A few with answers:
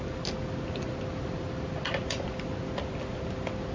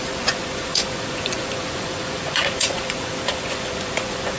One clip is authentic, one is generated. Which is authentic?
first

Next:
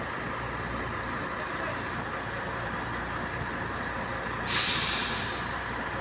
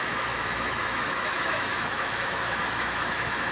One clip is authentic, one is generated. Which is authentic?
first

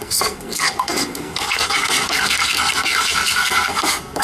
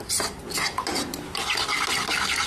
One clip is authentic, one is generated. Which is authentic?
second